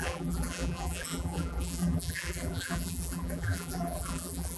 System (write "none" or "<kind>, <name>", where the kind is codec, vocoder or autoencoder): vocoder, BigVGAN v2